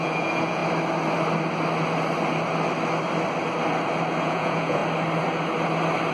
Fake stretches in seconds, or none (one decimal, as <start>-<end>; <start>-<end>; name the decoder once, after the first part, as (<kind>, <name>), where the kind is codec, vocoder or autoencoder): 0.0-0.6 (vocoder, Vocos); 4.2-4.8